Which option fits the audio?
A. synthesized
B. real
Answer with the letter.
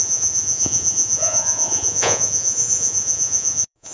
A